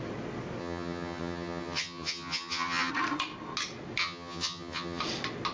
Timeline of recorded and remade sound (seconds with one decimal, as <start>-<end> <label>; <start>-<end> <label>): 0.0-0.6 recorded; 0.6-2.9 remade; 2.9-4.0 recorded; 4.0-5.0 remade; 5.0-5.5 recorded